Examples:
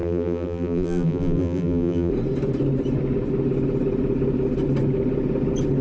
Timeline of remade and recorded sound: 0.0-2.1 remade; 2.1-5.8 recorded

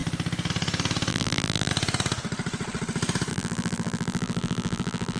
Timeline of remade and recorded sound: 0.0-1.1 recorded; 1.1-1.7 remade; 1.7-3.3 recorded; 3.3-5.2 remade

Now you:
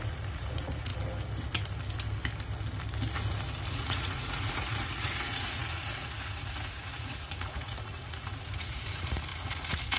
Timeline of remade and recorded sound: 0.0-0.9 remade; 0.9-3.7 recorded; 3.7-10.0 remade

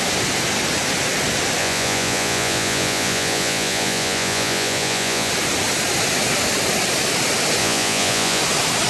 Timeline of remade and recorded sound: 0.0-1.6 recorded; 1.6-5.3 remade; 5.3-7.6 recorded; 7.6-8.4 remade; 8.4-8.9 recorded

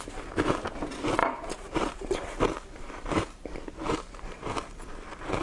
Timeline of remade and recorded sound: 0.0-1.2 recorded; 1.2-4.4 remade; 4.4-5.4 recorded

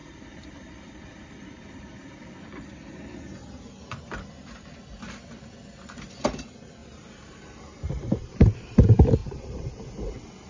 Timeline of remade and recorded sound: 0.0-2.7 remade; 2.7-6.8 recorded; 6.8-8.3 remade; 8.3-9.2 recorded; 9.2-10.1 remade; 10.1-10.5 recorded